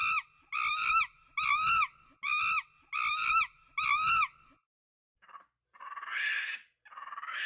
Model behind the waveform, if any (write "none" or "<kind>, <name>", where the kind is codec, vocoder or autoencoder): none